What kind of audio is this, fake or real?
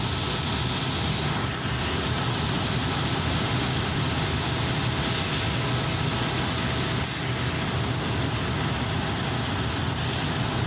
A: real